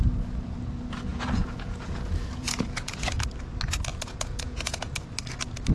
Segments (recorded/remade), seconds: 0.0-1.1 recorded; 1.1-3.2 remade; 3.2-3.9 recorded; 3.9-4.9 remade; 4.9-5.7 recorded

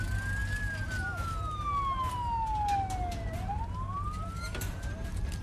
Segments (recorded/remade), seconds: 0.0-5.4 recorded

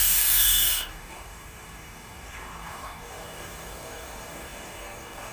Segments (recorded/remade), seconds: 0.0-5.3 remade

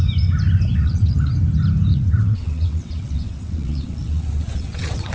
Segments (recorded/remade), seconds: 0.0-0.7 recorded; 0.7-1.3 remade; 1.3-1.9 recorded; 1.9-5.1 remade

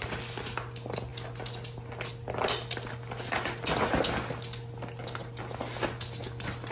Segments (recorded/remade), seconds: 0.0-6.7 recorded

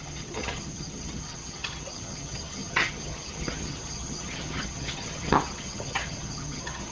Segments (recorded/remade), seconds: 0.0-6.9 remade

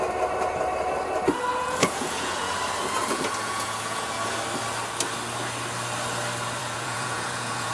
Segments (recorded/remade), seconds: 0.0-1.5 recorded; 1.5-2.5 remade; 2.5-3.0 recorded; 3.0-4.4 remade; 4.4-6.6 recorded; 6.6-7.7 remade

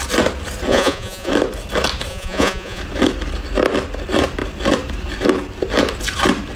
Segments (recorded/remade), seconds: 0.0-0.7 recorded; 0.7-1.3 remade; 1.3-2.1 recorded; 2.1-2.8 remade; 2.8-6.6 recorded